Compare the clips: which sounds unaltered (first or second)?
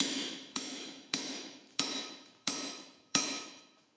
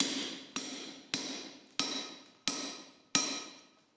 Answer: second